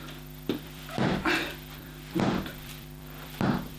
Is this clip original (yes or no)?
no